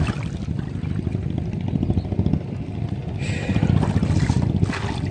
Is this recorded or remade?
recorded